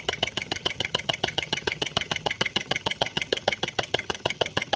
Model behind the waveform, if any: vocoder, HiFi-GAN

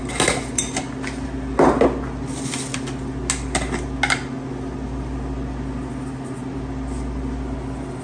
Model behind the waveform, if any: none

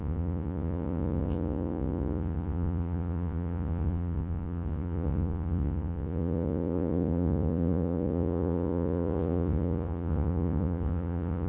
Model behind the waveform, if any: vocoder, Vocos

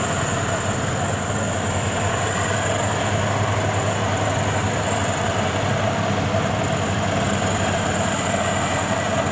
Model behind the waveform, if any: none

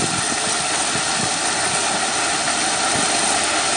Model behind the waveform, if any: none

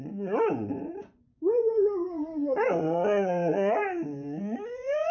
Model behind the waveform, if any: vocoder, Vocos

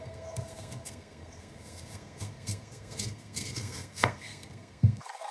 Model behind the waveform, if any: codec, SNAC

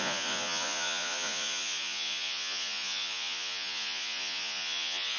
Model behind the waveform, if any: vocoder, Vocos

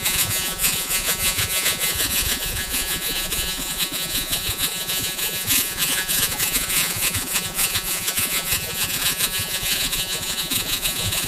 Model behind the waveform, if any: vocoder, Vocos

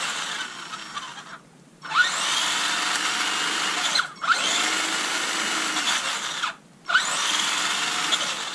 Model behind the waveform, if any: none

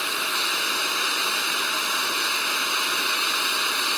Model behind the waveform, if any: none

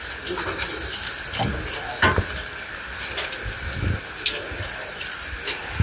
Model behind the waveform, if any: none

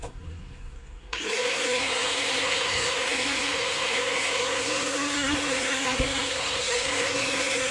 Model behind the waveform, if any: codec, SNAC